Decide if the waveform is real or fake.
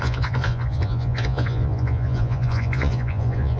fake